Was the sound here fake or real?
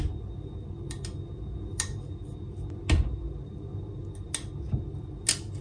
real